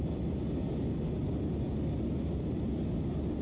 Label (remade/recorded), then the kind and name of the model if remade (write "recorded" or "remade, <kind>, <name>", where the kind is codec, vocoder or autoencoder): recorded